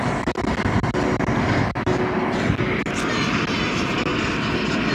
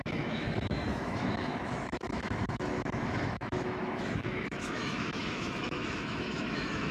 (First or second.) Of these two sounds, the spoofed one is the second